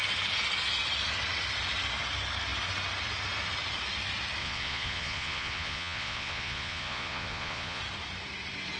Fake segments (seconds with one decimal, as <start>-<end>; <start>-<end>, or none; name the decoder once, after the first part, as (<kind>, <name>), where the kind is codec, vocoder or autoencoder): 4.4-7.8 (vocoder, Vocos)